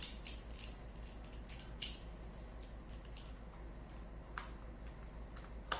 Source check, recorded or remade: recorded